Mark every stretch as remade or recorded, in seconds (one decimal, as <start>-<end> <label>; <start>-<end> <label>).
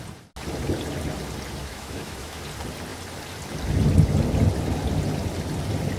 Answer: 0.0-1.6 recorded; 1.6-2.4 remade; 2.4-6.0 recorded